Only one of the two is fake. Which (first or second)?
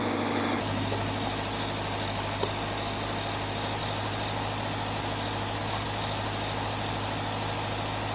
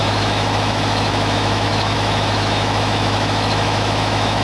second